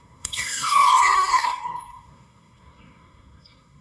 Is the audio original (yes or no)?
no